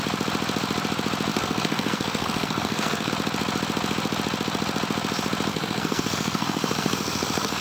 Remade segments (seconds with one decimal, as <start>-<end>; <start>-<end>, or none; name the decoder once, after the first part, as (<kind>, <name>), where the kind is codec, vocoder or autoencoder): 1.3-3.1 (codec, SNAC); 5.5-7.6